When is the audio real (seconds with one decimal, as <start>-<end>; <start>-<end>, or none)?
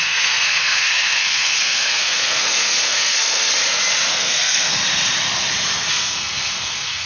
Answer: 3.5-4.1; 4.8-5.9